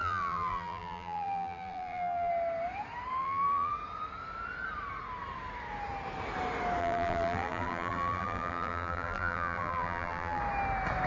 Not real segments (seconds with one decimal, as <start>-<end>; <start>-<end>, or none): 0.0-2.3; 3.2-3.7; 6.8-10.4